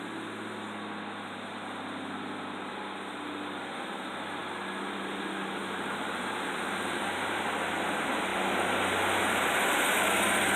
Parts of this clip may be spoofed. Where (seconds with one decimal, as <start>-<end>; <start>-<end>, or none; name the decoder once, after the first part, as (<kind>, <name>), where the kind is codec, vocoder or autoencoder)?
5.6-7.0 (vocoder, BigVGAN v2)

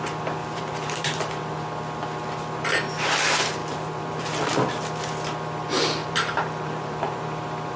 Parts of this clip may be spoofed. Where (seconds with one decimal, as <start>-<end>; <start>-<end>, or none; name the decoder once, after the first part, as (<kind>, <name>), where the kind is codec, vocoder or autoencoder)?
0.4-1.6 (vocoder, BigVGAN v2); 3.6-4.3; 6.0-7.2

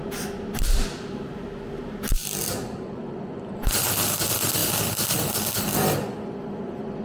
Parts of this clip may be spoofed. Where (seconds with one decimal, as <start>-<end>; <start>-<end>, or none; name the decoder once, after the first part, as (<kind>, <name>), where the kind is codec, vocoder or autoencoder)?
2.2-2.9 (vocoder, BigVGAN v2)

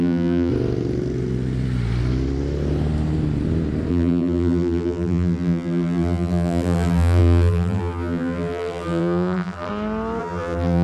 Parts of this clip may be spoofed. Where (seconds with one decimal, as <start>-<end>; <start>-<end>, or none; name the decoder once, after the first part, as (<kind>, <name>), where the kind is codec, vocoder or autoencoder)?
0.0-0.5 (vocoder, BigVGAN v2); 3.9-9.7; 10.2-10.8

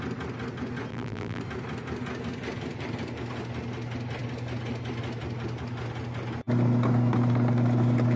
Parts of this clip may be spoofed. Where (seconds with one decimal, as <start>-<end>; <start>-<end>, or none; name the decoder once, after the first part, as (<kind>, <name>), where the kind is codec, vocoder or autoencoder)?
0.9-1.4 (vocoder, BigVGAN v2)